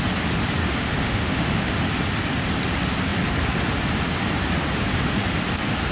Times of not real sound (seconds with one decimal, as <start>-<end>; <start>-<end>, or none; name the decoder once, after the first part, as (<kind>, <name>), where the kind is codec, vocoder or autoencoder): 0.6-1.8 (autoencoder, DAC-VAE)